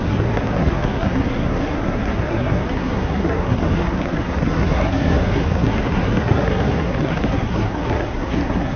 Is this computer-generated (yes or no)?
yes